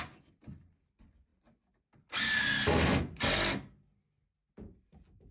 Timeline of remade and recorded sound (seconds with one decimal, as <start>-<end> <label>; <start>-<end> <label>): 0.0-5.3 recorded